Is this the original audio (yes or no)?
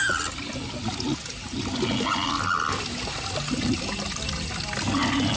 yes